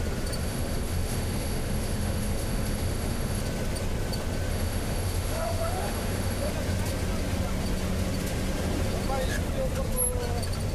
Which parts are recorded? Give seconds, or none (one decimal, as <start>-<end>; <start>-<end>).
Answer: 0.0-0.4; 3.4-4.5; 6.5-10.7